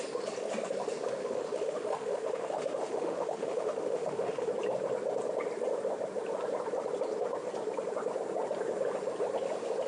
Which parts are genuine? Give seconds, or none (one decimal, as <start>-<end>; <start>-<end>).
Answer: 0.0-1.2; 4.5-9.9